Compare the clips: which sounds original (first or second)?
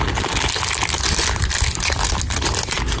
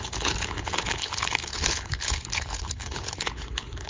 first